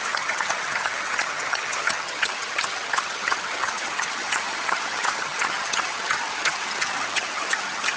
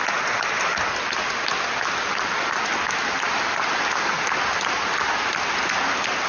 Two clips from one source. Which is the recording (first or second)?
second